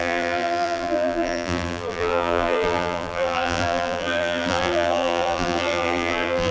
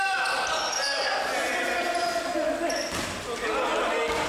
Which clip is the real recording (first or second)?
second